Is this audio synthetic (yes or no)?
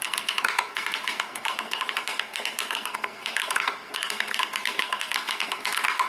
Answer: yes